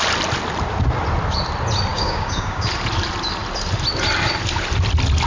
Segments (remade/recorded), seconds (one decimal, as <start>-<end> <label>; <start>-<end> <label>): 0.0-1.9 recorded; 1.9-2.7 remade; 2.7-5.3 recorded